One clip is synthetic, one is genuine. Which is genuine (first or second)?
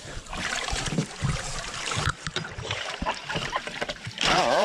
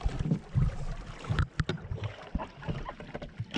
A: second